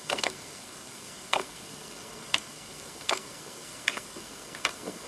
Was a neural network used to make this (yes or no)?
yes